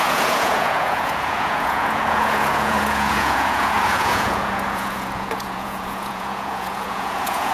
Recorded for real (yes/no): no